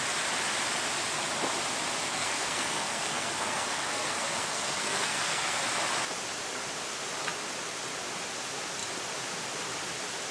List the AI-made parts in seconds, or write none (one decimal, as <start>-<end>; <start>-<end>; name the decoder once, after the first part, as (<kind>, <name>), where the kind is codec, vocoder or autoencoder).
2.1-5.6 (codec, SNAC)